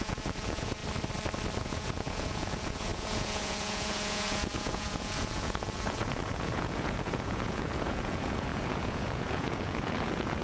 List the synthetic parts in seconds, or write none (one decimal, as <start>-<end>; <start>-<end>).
0.0-0.8; 1.6-10.4